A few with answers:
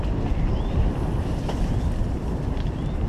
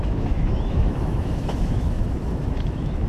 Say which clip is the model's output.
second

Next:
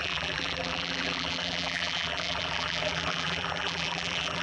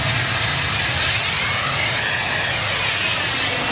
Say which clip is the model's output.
first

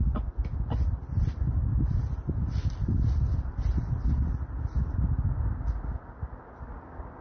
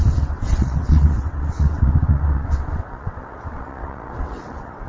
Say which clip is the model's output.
second